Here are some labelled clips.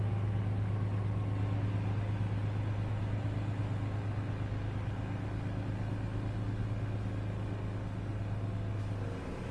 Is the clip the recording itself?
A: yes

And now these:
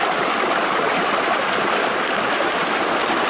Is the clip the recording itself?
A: yes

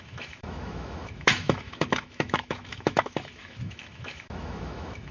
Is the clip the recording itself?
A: no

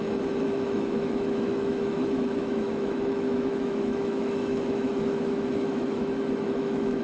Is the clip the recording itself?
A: no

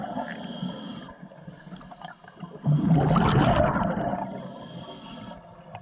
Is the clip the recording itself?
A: yes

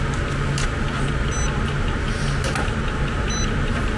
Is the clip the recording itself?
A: yes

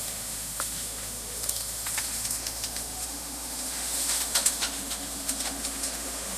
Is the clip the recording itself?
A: no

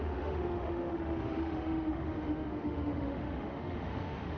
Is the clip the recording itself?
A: no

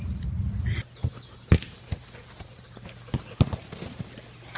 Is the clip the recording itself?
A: yes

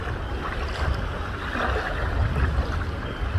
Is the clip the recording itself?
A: yes